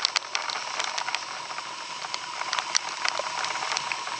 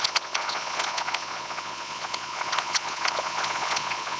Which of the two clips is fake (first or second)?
second